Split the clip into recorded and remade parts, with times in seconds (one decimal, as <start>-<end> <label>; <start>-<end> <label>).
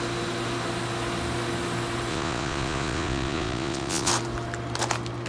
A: 0.0-2.1 recorded; 2.1-4.1 remade; 4.1-5.3 recorded